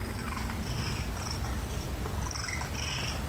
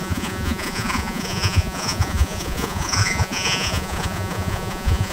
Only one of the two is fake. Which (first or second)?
second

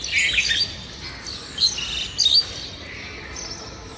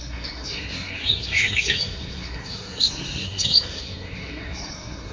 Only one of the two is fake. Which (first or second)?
second